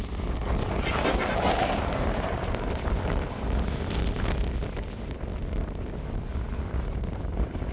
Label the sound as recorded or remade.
remade